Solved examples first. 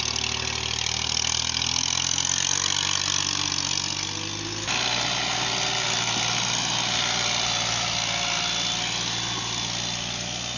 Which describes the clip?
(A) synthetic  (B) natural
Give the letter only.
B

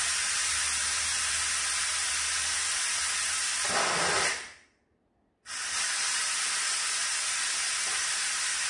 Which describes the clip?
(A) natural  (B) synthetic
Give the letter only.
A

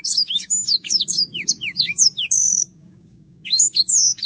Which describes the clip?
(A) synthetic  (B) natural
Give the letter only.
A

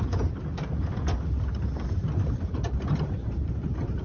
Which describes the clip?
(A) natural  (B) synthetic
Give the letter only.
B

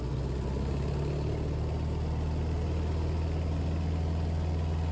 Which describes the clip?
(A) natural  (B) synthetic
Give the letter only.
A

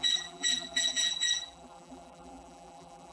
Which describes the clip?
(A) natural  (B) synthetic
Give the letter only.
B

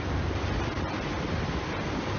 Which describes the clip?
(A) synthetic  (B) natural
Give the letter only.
B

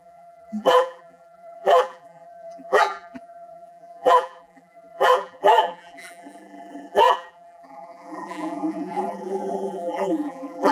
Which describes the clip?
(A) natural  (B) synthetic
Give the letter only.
B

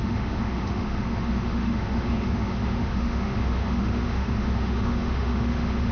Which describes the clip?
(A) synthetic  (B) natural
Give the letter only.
A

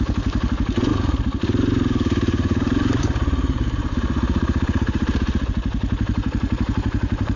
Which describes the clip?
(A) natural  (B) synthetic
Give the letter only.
B